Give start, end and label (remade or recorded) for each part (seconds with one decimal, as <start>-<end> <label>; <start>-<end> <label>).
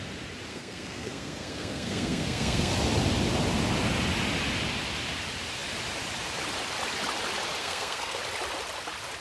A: 0.0-0.5 recorded; 0.5-2.7 remade; 2.7-7.6 recorded; 7.6-8.2 remade; 8.2-9.2 recorded